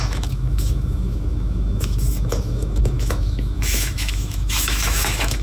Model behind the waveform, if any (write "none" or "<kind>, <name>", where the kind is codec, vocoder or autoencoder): autoencoder, DAC-VAE